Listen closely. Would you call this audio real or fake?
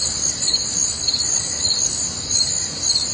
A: real